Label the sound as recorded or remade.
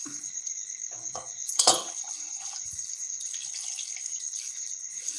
remade